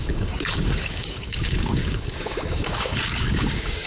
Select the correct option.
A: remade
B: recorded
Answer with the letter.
A